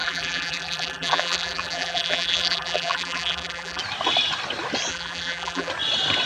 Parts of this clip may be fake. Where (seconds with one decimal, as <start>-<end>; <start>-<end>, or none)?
0.0-3.8; 4.9-5.7

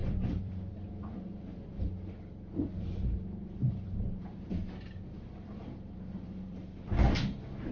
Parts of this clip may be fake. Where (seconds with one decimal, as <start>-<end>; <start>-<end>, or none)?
0.0-4.6; 5.1-6.6

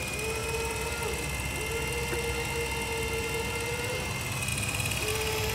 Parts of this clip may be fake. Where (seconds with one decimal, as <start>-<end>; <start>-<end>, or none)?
none

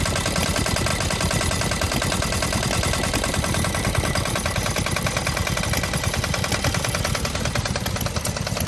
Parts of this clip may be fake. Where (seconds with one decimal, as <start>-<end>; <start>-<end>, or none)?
none

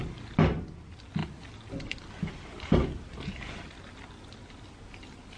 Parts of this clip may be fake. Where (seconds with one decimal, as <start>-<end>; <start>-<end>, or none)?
1.2-3.9